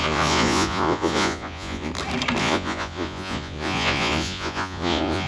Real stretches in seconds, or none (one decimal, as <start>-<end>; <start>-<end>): 1.9-2.4

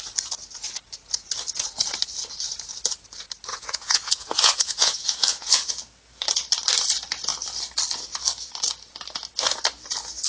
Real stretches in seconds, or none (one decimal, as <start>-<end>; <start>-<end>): 0.0-3.5; 5.7-10.3